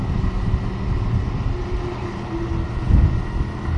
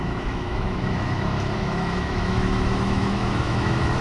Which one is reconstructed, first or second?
second